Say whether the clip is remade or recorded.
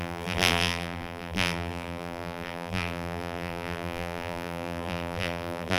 remade